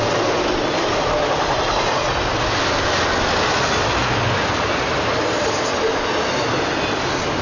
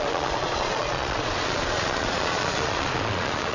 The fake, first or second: second